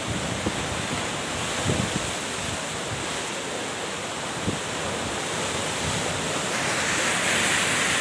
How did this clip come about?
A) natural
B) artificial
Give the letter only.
A